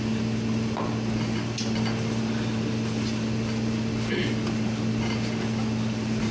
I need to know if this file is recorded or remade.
recorded